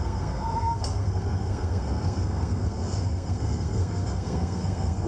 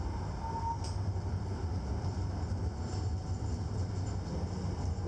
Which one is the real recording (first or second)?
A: second